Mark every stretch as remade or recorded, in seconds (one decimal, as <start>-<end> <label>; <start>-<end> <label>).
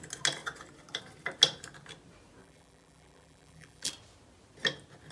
0.0-2.4 recorded; 2.4-3.9 remade; 3.9-5.1 recorded